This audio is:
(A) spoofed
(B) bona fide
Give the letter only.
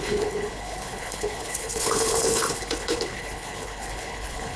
A